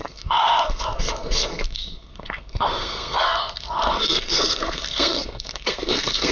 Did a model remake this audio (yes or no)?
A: yes